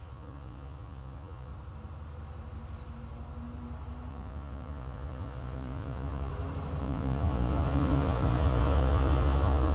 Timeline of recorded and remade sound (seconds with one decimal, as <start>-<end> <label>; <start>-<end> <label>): 0.0-1.5 remade; 1.5-4.1 recorded; 4.1-6.3 remade; 6.3-6.8 recorded; 6.8-9.7 remade